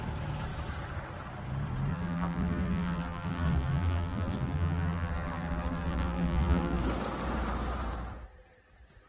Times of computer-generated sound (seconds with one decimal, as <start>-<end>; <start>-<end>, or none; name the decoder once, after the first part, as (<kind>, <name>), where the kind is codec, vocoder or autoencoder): 1.9-6.8 (vocoder, BigVGAN v2)